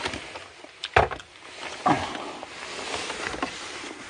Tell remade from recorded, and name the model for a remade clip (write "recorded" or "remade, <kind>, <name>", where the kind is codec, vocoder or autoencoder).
recorded